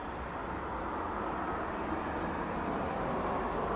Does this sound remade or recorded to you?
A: recorded